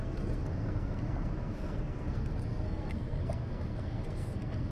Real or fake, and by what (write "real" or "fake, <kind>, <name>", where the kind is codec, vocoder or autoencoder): fake, codec, SNAC